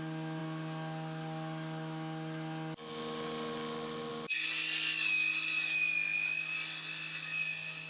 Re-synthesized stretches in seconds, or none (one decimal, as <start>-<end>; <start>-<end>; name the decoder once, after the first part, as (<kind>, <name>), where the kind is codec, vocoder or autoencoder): none